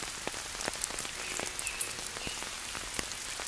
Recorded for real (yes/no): yes